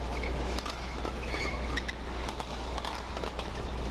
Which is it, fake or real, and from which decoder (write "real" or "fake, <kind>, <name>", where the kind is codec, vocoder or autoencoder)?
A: fake, autoencoder, DAC-VAE